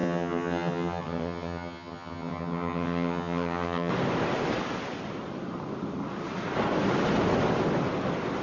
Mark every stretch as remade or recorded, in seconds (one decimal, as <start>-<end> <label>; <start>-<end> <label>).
0.0-3.9 remade; 3.9-8.4 recorded